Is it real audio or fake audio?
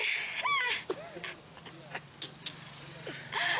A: real